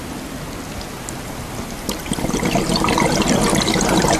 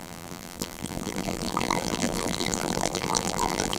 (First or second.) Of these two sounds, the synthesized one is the second